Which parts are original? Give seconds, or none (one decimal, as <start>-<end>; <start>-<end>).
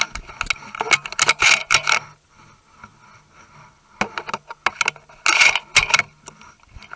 0.0-7.0